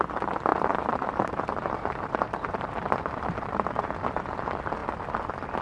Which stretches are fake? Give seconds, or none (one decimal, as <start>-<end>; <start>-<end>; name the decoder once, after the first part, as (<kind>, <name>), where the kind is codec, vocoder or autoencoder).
0.5-3.9 (vocoder, BigVGAN v2)